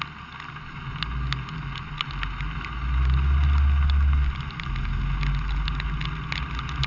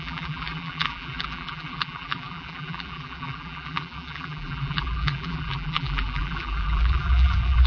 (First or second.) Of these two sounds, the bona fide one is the first